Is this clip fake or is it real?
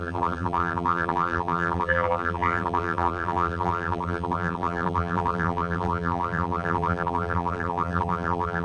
fake